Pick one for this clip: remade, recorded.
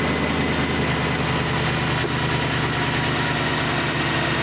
recorded